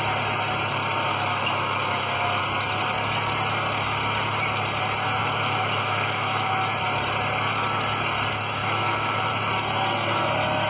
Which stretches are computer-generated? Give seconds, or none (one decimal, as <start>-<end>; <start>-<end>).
1.1-2.4; 5.2-6.5; 8.6-9.3